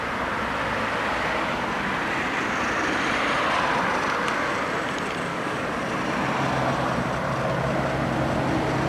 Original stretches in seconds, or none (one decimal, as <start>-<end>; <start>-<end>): 0.0-5.3; 5.8-8.9